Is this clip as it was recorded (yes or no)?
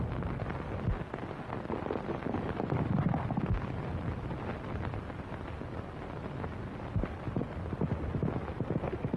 yes